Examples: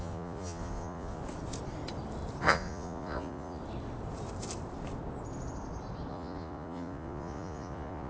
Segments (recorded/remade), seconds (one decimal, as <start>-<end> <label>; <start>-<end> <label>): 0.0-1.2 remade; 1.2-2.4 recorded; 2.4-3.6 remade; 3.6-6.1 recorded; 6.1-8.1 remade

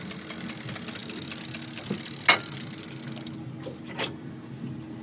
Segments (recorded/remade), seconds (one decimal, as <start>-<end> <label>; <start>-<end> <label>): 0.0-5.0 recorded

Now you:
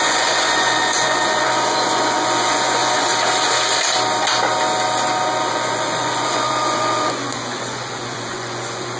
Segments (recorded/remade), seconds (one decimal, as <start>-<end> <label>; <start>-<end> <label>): 0.0-3.1 remade; 3.1-5.5 recorded; 5.5-9.0 remade

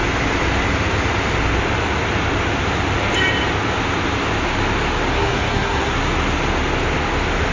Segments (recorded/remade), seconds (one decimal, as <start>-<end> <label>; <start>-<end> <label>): 0.0-5.1 recorded; 5.1-6.0 remade; 6.0-7.5 recorded

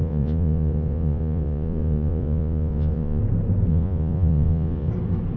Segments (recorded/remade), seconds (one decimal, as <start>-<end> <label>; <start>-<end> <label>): 0.0-3.2 remade; 3.2-3.7 recorded; 3.7-4.9 remade; 4.9-5.4 recorded

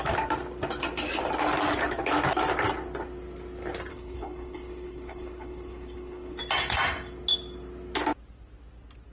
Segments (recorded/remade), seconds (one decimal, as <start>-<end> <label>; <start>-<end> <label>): 0.0-3.9 recorded; 3.9-6.4 remade; 6.4-9.1 recorded